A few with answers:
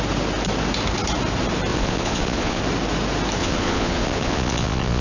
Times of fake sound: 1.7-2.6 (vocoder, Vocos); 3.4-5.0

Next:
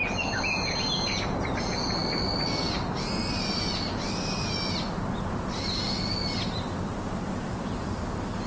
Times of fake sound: none

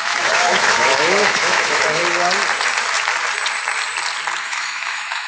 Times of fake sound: 0.0-2.0 (autoencoder, DAC-VAE); 4.4-5.3

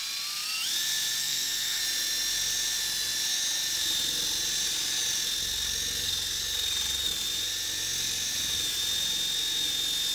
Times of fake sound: 1.2-1.8 (codec, SNAC)

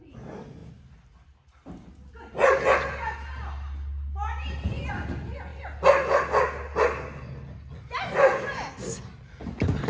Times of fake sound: none

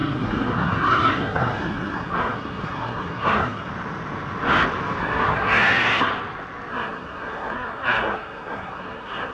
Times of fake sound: 0.0-3.7 (codec, SNAC); 5.0-6.1; 6.7-9.3

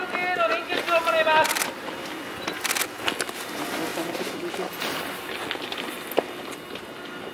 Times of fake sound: none